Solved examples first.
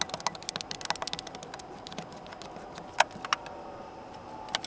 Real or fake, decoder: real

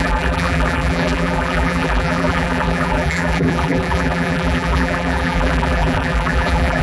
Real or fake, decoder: fake, vocoder, BigVGAN v2